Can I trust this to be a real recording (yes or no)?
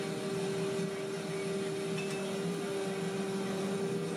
yes